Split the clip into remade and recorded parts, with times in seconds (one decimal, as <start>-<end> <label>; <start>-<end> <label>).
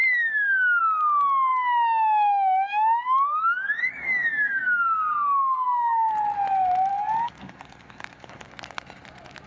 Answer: 0.0-0.8 remade; 0.8-1.5 recorded; 1.5-6.1 remade; 6.1-6.9 recorded; 6.9-8.5 remade; 8.5-9.5 recorded